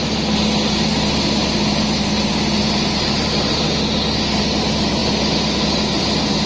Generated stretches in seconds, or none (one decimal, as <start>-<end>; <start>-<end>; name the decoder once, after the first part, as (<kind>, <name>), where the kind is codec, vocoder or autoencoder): none

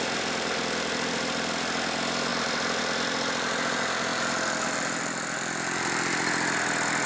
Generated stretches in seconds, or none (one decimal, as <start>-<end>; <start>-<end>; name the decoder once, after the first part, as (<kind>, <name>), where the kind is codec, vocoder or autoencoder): none